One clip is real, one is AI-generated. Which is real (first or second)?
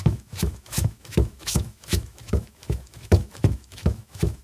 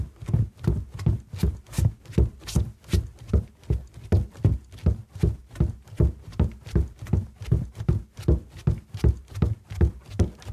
second